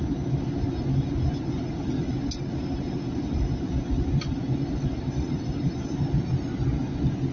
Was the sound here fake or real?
real